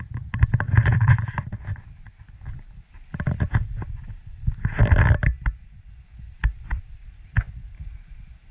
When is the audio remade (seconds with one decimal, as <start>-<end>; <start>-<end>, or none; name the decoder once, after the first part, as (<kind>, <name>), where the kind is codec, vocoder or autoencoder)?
none